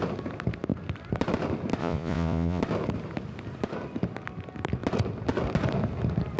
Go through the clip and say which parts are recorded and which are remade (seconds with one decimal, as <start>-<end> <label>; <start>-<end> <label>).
0.0-1.8 recorded; 1.8-2.6 remade; 2.6-6.4 recorded